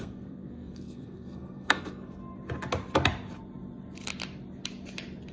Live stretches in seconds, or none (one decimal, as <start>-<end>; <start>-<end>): 2.2-5.3